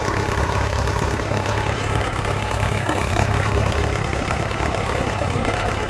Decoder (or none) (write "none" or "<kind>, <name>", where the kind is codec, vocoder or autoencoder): codec, SNAC